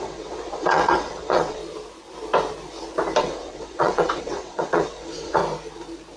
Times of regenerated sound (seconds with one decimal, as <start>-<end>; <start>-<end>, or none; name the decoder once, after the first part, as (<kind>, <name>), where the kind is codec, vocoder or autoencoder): 0.0-1.6 (vocoder, WaveNeXt); 3.2-5.4